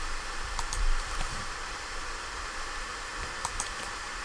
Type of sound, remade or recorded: remade